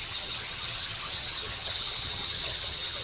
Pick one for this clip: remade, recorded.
remade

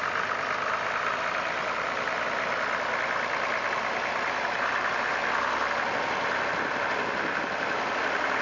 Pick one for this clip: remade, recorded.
recorded